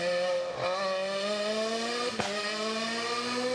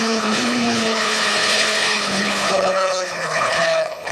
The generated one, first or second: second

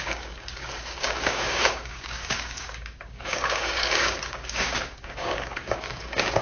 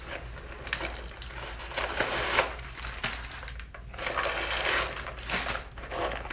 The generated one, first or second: first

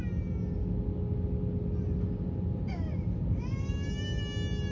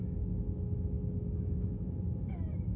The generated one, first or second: second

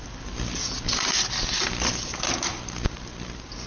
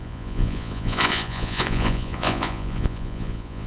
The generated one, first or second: second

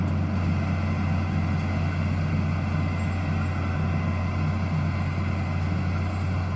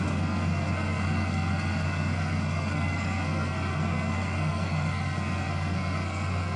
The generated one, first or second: second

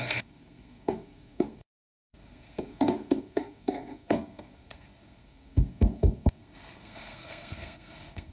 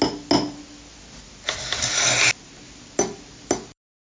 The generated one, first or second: first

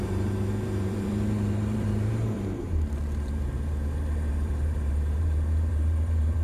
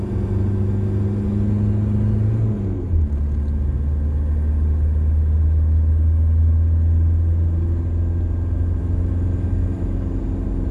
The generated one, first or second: first